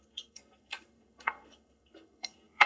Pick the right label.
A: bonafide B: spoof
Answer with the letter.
B